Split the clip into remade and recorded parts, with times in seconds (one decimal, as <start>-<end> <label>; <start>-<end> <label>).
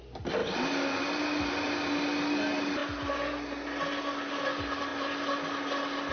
0.0-6.1 recorded